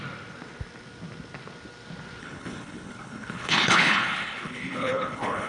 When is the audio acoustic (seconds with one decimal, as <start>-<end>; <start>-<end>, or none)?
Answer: 0.0-2.2